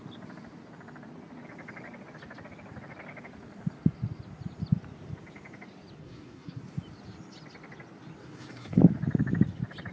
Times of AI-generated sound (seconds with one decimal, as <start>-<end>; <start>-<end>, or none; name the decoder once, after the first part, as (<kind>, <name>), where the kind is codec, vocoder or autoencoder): 6.0-6.6 (codec, SNAC); 8.2-8.8